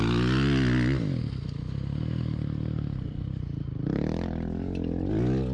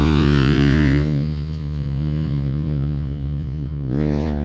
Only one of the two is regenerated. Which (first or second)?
second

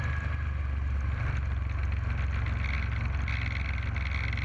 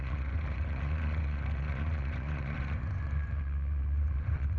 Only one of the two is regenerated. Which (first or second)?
second